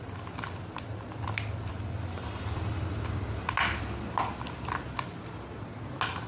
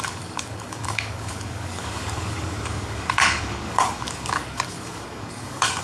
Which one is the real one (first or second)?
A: first